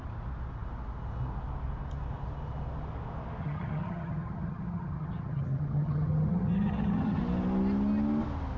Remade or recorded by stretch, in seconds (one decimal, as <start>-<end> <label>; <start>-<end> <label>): 0.0-3.4 recorded; 3.4-7.2 remade; 7.2-8.6 recorded